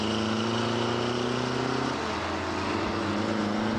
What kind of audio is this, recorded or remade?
recorded